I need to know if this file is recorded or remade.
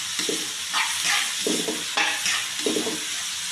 recorded